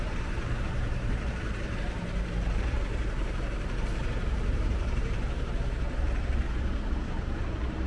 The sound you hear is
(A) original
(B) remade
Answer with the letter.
B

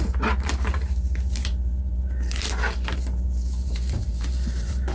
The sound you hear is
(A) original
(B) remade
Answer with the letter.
B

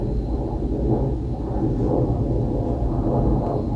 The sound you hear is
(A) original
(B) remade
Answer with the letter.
A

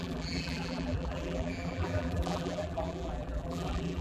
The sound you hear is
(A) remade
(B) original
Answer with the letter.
A